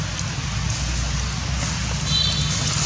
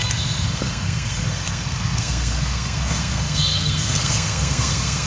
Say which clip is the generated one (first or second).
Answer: second